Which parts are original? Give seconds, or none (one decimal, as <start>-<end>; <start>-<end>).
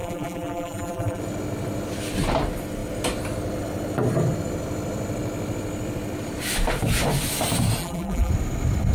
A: 1.2-7.8; 8.3-8.9